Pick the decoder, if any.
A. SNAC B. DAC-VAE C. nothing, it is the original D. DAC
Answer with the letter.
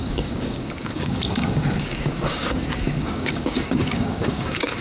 D